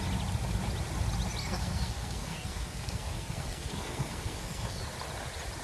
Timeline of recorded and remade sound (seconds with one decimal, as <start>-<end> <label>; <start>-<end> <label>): 0.0-1.4 recorded; 1.4-4.8 remade; 4.8-5.6 recorded